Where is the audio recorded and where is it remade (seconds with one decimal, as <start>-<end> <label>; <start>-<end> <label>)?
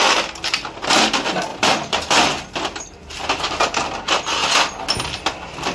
0.0-5.7 recorded